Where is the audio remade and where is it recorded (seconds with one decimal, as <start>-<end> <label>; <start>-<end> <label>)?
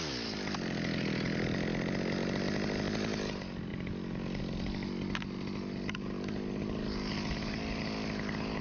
0.0-8.6 recorded